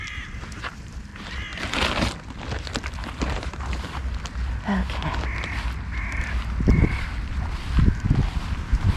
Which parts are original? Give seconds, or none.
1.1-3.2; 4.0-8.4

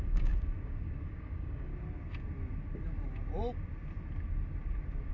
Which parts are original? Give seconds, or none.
1.7-5.1

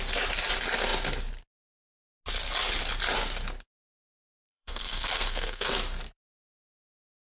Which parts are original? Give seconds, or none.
0.0-4.4; 5.7-7.3

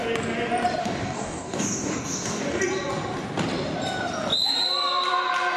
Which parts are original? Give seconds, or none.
0.0-0.8; 2.6-5.6

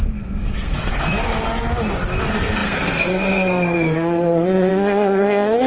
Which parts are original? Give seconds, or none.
0.9-2.2

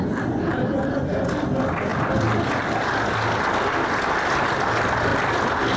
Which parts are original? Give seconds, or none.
1.9-4.0; 5.1-5.8

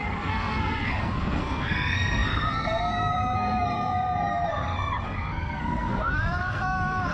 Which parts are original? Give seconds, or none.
none

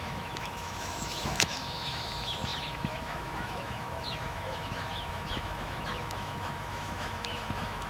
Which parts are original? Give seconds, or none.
none